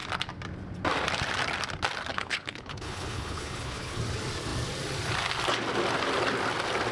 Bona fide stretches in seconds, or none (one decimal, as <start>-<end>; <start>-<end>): 0.0-2.1; 4.0-6.9